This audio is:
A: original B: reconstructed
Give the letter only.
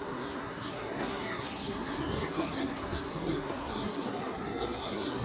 B